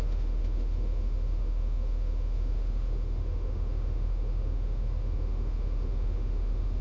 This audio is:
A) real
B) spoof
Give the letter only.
B